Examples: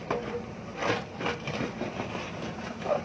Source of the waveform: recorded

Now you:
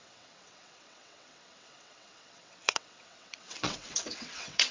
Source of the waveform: remade